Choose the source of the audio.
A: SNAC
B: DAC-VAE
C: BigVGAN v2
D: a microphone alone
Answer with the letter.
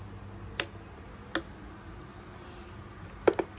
D